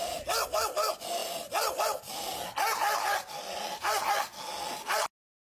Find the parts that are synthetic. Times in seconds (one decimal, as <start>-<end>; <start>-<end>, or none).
none